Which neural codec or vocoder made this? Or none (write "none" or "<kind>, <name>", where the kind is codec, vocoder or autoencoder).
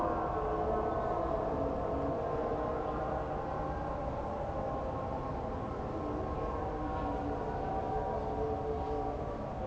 none